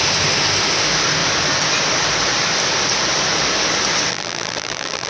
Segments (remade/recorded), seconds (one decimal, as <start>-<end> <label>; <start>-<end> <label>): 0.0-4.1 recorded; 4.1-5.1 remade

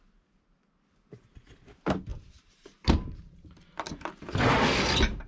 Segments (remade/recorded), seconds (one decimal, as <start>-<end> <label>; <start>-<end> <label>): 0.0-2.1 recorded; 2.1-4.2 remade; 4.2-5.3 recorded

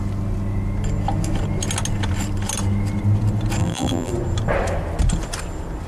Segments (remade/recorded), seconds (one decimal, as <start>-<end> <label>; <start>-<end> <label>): 0.0-3.6 recorded; 3.6-4.1 remade; 4.1-5.9 recorded

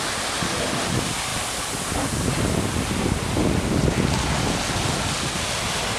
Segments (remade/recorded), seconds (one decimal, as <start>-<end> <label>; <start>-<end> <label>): 0.0-6.0 recorded